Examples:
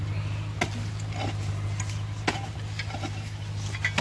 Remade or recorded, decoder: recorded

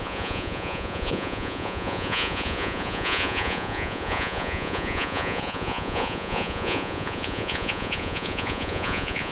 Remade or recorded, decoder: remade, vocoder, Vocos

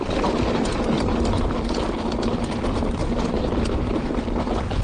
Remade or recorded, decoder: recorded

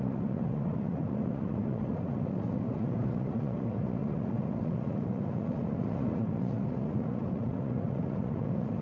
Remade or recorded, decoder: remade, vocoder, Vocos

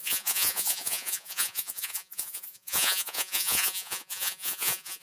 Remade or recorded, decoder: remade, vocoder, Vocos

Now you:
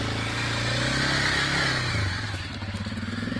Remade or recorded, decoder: recorded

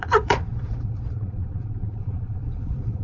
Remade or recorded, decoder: remade, vocoder, Vocos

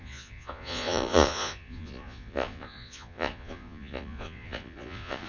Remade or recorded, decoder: remade, vocoder, Vocos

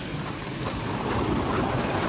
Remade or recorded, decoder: recorded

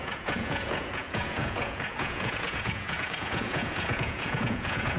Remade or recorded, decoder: remade, vocoder, Vocos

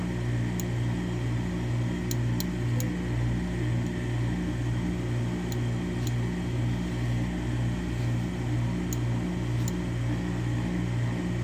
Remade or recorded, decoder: recorded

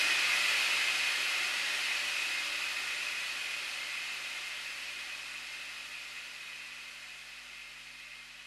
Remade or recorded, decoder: recorded